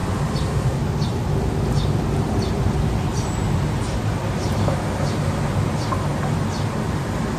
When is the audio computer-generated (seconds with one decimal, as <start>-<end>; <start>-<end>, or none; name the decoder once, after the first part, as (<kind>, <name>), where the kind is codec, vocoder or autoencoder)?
none